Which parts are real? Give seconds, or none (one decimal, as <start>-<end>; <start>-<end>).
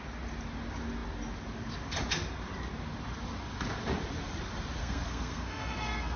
0.0-4.8